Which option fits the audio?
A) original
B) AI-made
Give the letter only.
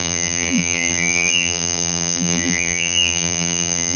B